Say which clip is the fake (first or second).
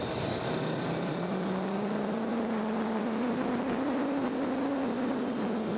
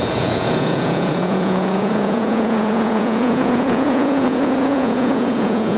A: second